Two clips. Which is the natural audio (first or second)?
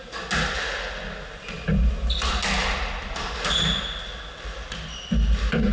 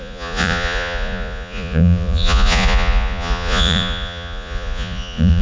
first